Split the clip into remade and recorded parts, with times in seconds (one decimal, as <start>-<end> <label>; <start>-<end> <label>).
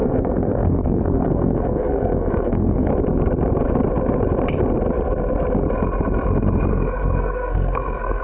0.0-2.9 remade; 2.9-6.7 recorded; 6.7-8.2 remade